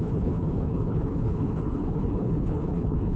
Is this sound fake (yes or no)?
yes